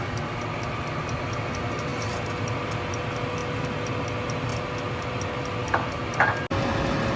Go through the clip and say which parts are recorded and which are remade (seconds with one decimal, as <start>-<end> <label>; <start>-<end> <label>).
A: 0.0-7.2 recorded